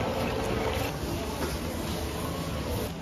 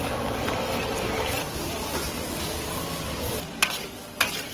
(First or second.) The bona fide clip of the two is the first